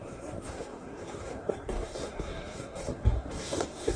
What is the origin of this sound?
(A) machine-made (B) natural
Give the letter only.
A